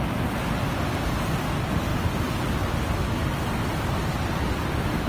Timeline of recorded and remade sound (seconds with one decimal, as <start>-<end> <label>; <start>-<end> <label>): 0.0-5.1 recorded